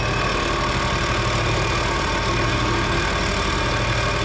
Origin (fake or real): real